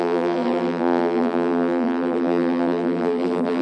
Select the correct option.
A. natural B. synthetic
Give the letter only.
B